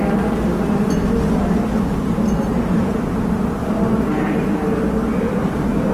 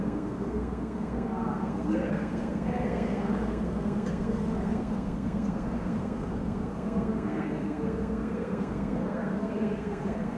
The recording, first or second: first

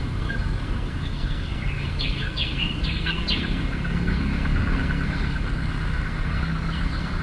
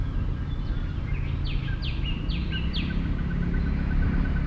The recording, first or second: second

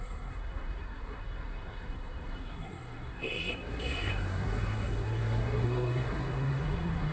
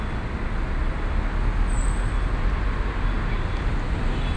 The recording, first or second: second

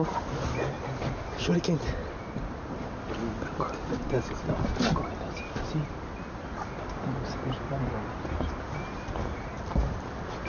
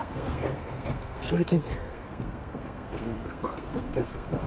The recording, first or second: first